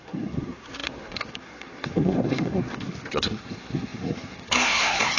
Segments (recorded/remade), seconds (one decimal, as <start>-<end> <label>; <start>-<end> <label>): 0.0-5.2 remade